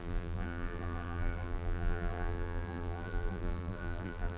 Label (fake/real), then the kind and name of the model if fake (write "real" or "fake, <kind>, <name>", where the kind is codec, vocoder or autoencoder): fake, vocoder, BigVGAN v2